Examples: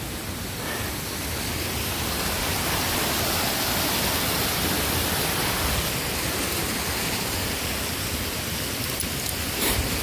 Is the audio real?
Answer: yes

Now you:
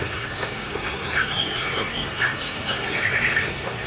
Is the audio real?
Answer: no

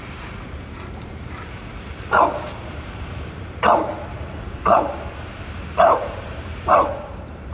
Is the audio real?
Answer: no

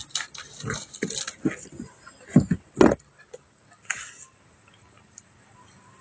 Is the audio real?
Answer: yes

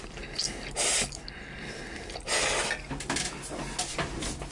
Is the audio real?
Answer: yes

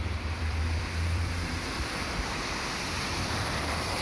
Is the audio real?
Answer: no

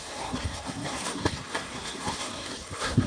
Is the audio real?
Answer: no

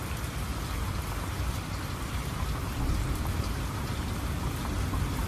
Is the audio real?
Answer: yes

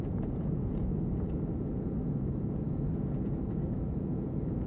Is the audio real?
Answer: no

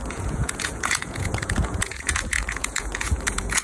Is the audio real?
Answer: no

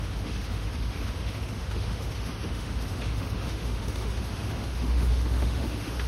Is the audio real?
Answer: no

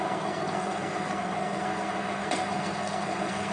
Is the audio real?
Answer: no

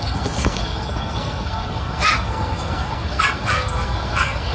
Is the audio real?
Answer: no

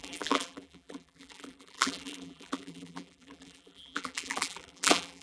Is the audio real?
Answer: no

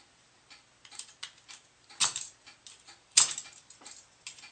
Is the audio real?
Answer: yes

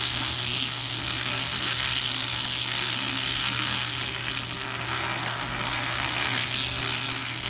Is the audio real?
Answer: no